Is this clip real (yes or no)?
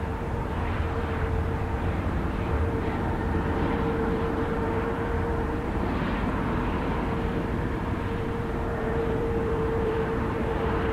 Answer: no